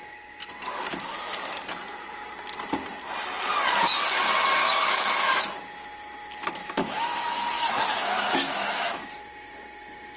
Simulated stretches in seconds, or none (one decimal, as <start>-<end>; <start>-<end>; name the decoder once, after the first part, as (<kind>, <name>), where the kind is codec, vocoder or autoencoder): 0.9-1.6 (autoencoder, DAC-VAE); 4.6-5.4; 6.6-9.1